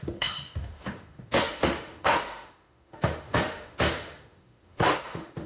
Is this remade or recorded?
remade